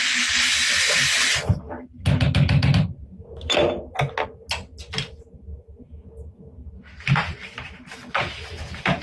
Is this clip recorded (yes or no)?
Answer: yes